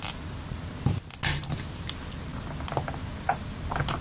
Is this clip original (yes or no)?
yes